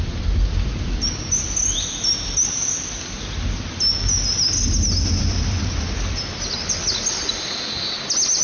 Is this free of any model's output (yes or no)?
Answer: yes